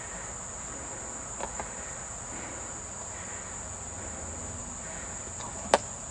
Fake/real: real